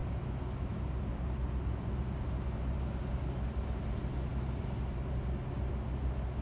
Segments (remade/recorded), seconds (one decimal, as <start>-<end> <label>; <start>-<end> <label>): 0.0-6.4 recorded